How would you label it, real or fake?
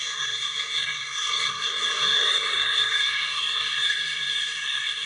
fake